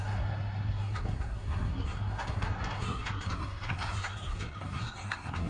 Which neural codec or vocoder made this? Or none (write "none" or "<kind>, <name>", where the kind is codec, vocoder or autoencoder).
codec, SNAC